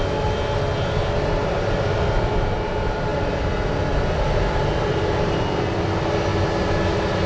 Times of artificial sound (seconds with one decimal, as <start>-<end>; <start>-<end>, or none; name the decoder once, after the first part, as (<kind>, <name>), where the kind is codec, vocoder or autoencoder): none